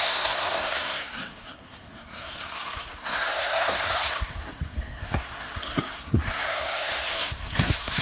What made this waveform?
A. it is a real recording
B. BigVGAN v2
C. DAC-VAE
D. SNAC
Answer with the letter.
D